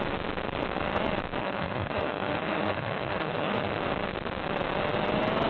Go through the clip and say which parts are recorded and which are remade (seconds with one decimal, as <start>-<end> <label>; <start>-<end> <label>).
0.0-1.4 recorded; 1.4-3.8 remade; 3.8-5.5 recorded